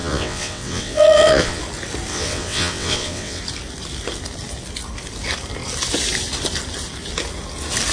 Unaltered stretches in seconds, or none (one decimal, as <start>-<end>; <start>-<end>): 1.6-2.1; 3.4-7.9